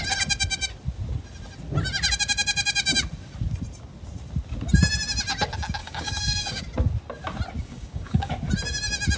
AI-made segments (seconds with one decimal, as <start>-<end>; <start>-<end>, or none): 5.8-6.6; 7.6-8.3